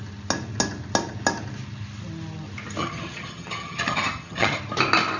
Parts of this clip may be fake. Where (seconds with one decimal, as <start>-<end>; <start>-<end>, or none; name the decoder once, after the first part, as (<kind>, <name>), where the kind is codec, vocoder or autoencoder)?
2.8-4.6 (vocoder, HiFi-GAN)